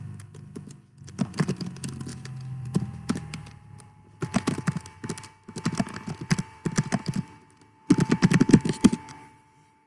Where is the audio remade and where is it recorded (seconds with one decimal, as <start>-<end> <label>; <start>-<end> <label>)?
0.0-2.1 recorded; 2.1-3.9 remade; 3.9-9.9 recorded